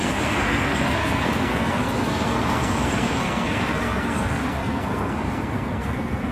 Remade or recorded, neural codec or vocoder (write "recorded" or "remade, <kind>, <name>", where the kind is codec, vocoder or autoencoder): remade, codec, SNAC